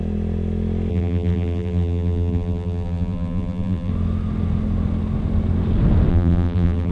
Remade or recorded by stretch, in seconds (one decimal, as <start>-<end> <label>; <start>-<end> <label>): 0.0-0.9 recorded; 0.9-3.9 remade; 3.9-6.1 recorded; 6.1-6.9 remade